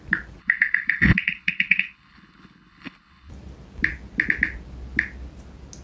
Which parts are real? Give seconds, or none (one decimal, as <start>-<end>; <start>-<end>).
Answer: 0.0-0.4; 3.3-5.8